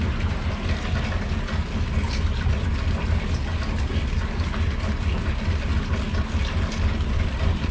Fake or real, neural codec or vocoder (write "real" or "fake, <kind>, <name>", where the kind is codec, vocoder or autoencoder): real